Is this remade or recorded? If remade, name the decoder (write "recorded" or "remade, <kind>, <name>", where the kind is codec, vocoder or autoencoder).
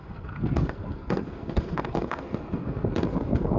remade, codec, SNAC